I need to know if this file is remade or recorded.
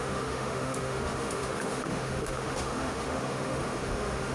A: remade